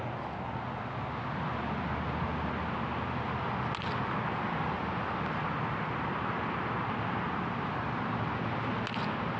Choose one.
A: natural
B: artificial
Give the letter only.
A